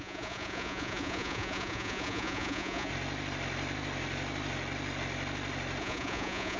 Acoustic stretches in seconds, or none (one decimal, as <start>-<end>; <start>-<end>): 2.9-5.8